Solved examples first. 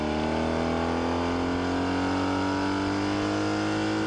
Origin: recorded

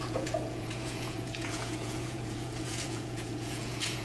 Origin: remade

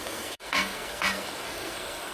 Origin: remade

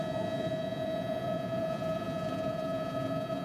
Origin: remade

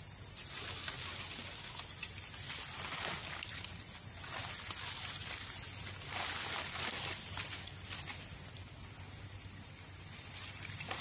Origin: recorded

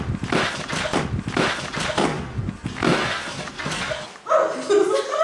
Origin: recorded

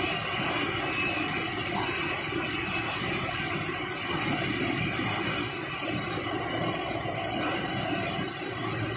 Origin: recorded